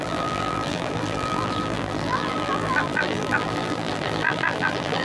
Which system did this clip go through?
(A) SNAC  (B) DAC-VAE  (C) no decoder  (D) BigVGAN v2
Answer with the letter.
D